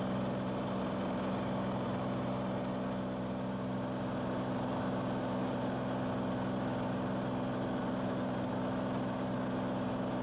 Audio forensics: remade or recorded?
recorded